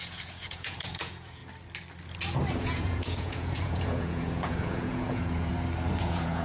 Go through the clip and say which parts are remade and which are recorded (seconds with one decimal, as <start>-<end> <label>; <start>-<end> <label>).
0.0-1.4 remade; 1.4-2.6 recorded; 2.6-5.5 remade; 5.5-6.0 recorded; 6.0-6.4 remade